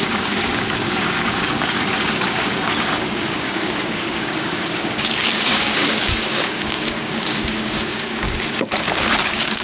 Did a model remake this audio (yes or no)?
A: yes